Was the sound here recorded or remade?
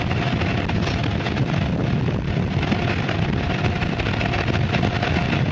recorded